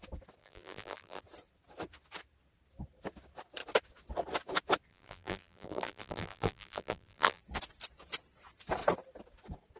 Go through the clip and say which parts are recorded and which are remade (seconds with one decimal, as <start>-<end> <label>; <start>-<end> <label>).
0.0-0.4 recorded; 0.4-1.2 remade; 1.2-4.9 recorded; 4.9-7.4 remade; 7.4-9.8 recorded